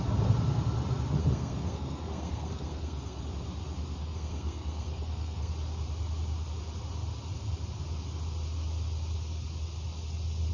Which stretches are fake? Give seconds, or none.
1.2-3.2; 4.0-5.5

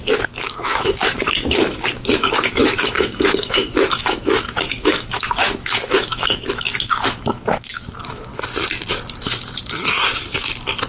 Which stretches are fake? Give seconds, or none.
0.0-8.3